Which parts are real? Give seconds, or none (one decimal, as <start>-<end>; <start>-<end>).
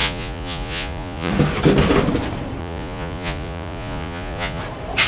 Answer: 1.3-2.6; 4.6-5.1